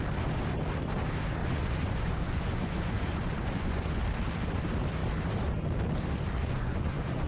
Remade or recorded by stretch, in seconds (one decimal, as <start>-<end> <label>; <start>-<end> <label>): 0.0-1.4 recorded; 1.4-4.0 remade; 4.0-6.4 recorded; 6.4-7.3 remade